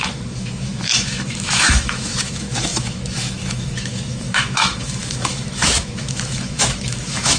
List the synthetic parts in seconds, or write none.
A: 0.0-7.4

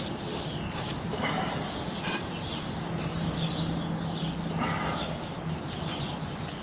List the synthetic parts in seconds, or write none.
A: 5.9-6.6

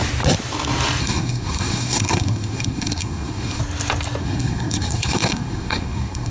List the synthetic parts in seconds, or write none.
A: 1.0-3.6; 4.2-6.3

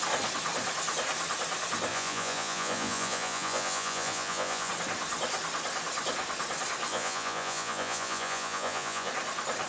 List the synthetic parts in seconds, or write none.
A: 1.9-4.7; 6.9-9.1